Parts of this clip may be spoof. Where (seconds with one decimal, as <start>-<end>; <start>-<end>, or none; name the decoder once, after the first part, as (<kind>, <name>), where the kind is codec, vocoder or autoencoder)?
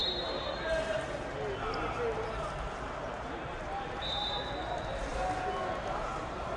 none